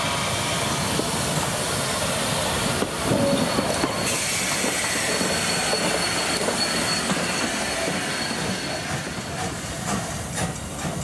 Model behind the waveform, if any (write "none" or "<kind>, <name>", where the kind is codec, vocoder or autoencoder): none